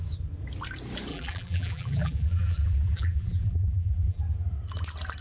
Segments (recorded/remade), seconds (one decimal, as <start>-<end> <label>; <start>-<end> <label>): 0.0-1.1 recorded; 1.1-4.2 remade; 4.2-5.2 recorded